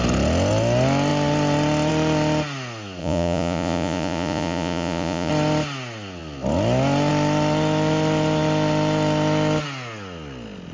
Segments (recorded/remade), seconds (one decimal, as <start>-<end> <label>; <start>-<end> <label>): 0.0-3.0 recorded; 3.0-5.3 remade; 5.3-10.7 recorded